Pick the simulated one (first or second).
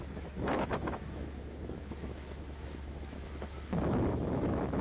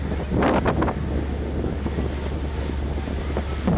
first